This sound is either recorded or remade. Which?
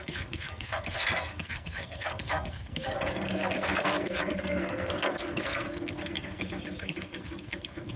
remade